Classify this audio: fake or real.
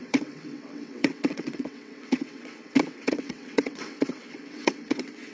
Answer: fake